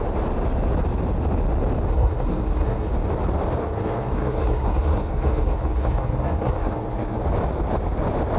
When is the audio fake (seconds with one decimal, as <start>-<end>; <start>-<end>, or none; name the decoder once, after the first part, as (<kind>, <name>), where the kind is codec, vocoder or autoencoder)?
1.9-2.9 (codec, SNAC); 3.6-7.2